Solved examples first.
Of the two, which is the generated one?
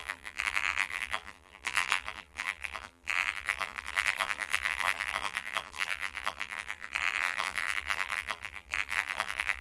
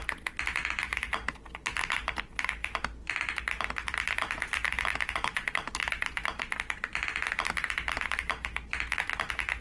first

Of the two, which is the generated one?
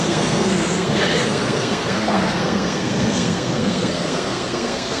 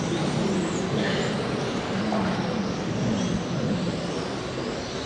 first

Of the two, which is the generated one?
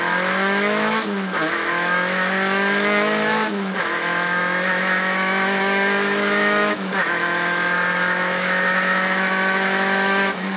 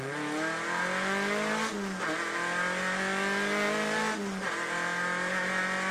first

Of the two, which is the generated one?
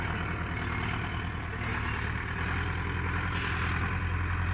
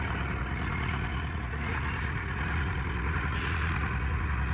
second